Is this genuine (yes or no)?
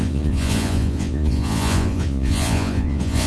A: no